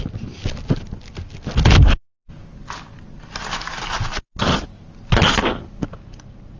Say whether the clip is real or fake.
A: real